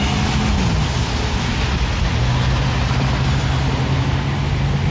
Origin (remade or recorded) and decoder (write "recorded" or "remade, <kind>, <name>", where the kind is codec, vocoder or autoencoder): recorded